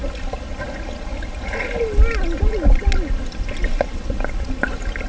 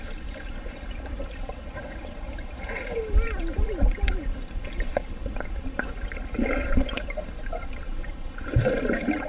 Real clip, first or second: first